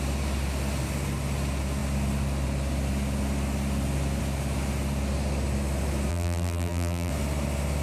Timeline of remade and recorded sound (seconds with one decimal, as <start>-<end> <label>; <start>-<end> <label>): 0.0-6.1 recorded; 6.1-7.1 remade; 7.1-7.8 recorded